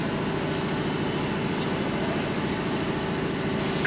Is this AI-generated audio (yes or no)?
no